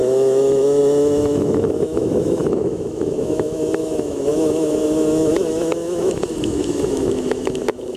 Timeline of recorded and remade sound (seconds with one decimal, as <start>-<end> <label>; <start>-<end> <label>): 0.0-8.0 remade